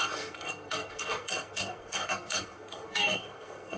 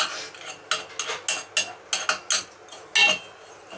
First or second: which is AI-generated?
first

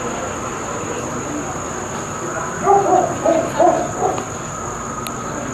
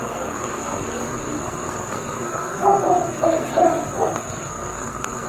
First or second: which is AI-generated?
second